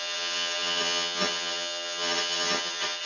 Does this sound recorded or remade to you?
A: remade